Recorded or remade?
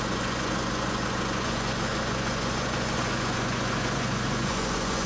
remade